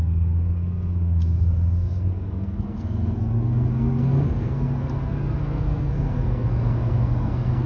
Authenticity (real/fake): fake